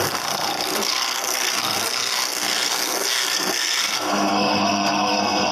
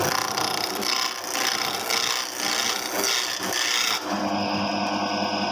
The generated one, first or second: first